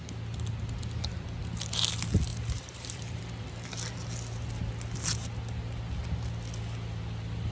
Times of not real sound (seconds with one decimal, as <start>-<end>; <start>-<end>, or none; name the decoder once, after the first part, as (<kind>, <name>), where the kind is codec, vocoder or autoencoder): 2.3-3.2 (vocoder, BigVGAN v2)